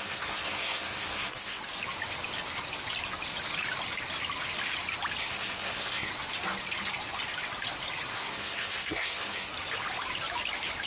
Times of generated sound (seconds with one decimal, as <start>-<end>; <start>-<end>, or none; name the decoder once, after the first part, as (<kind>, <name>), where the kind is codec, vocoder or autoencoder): 0.0-1.6 (codec, SNAC); 5.2-6.1; 8.1-9.5